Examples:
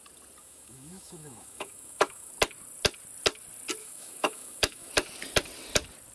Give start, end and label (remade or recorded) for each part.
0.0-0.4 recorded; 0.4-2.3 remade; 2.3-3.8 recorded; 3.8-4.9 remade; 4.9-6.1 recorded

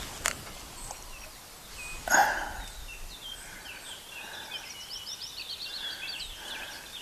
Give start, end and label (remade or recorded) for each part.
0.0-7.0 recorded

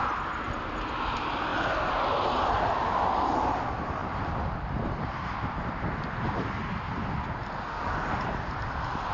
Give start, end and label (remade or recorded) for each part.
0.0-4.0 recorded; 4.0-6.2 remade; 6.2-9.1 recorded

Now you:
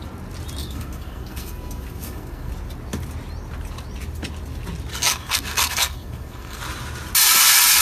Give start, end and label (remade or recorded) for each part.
0.0-0.6 recorded; 0.6-2.5 remade; 2.5-4.9 recorded; 4.9-6.6 remade; 6.6-7.8 recorded

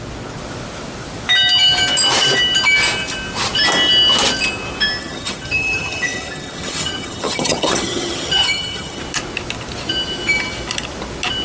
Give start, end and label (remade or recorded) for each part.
0.0-5.0 recorded; 5.0-9.0 remade; 9.0-11.4 recorded

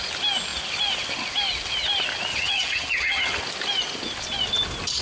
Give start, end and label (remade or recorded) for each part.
0.0-2.3 recorded; 2.3-3.4 remade; 3.4-5.0 recorded